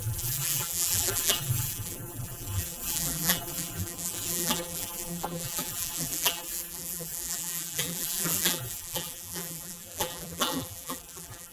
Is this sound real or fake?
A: fake